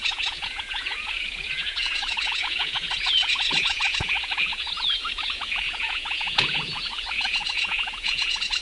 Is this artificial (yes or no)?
yes